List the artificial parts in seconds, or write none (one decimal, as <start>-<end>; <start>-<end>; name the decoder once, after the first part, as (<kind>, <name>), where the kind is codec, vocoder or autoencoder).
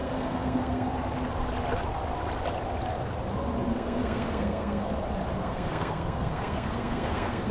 0.0-0.9 (codec, SNAC); 3.7-4.9; 5.4-7.5